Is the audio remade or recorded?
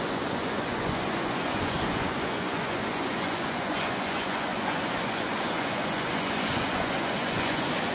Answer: remade